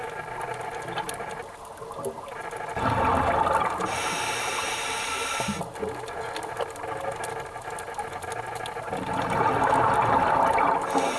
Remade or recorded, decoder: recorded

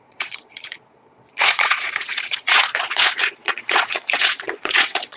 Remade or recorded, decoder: remade, vocoder, Vocos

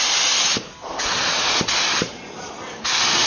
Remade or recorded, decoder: recorded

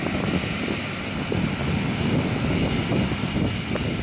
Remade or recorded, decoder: recorded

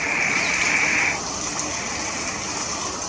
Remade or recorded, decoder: recorded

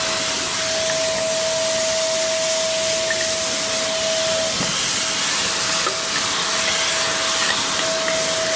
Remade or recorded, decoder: recorded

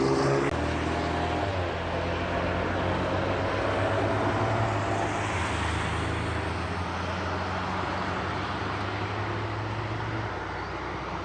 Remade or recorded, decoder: recorded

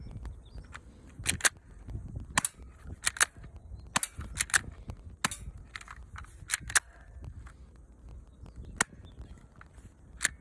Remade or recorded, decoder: recorded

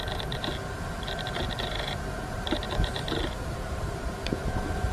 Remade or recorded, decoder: remade, vocoder, BigVGAN v2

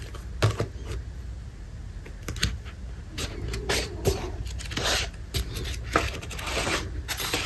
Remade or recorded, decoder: recorded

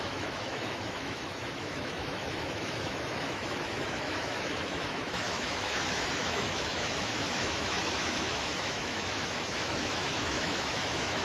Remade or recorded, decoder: remade, autoencoder, DAC-VAE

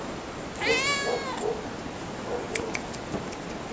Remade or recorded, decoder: recorded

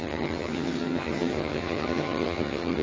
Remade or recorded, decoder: remade, vocoder, HiFi-GAN